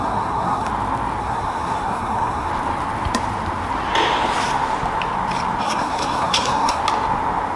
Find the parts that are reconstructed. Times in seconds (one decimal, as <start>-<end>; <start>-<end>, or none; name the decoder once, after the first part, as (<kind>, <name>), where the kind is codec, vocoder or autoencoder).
0.0-0.7 (codec, SNAC); 1.2-2.5; 5.6-6.8